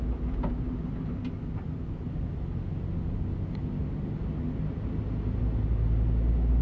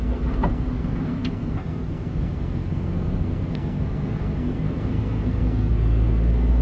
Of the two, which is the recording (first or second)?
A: first